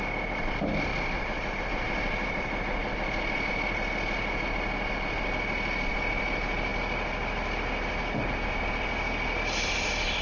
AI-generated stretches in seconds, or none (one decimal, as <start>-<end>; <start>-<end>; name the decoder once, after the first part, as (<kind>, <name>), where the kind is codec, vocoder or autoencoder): 0.9-1.6 (vocoder, BigVGAN v2)